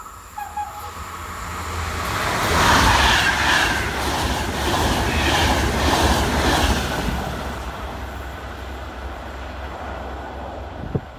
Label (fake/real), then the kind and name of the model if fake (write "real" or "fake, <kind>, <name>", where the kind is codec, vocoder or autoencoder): real